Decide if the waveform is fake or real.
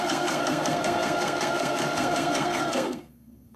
fake